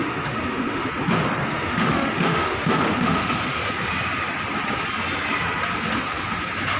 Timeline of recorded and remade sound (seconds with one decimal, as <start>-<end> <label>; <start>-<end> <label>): 0.0-0.9 remade; 0.9-1.4 recorded; 1.4-3.7 remade; 3.7-6.8 recorded